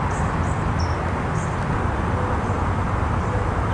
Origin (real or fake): real